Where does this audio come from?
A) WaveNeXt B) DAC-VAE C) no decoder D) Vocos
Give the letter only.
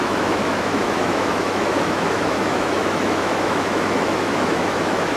B